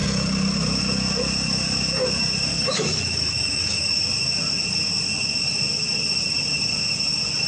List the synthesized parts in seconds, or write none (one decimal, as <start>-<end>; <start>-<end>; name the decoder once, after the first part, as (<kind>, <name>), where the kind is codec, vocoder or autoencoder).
2.5-3.9 (autoencoder, DAC-VAE)